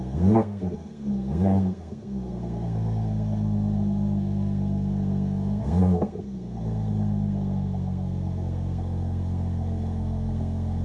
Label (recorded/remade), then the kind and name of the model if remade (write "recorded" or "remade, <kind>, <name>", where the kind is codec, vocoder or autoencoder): remade, codec, SNAC